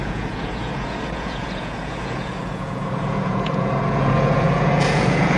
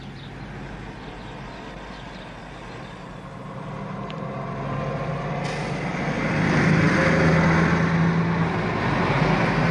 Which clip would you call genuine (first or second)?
second